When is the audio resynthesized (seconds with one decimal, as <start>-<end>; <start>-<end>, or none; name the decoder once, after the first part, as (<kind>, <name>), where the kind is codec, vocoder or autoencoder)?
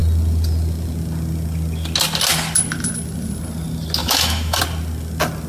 4.0-4.6 (autoencoder, DAC-VAE)